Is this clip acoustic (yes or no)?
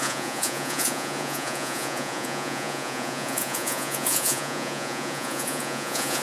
no